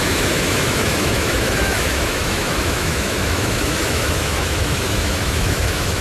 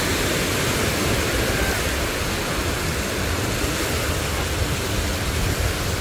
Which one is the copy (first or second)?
first